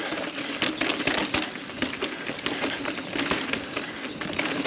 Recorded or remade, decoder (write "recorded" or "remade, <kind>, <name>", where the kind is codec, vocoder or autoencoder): recorded